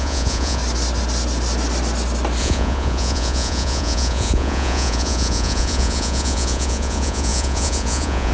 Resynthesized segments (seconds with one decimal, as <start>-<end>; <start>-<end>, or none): 0.0-0.6; 2.4-8.3